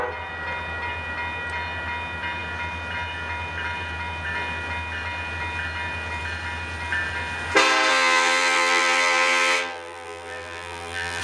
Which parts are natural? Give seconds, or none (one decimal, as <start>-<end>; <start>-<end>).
0.0-7.9